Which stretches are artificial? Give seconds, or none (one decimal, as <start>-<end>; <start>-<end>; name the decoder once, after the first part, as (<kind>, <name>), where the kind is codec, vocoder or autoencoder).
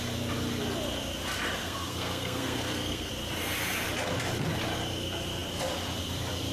1.6-3.1 (codec, SNAC)